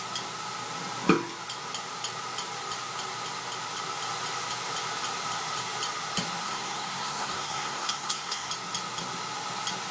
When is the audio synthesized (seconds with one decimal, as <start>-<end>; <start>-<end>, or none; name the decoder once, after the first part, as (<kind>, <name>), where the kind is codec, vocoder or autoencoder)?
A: 6.4-8.5 (codec, SNAC)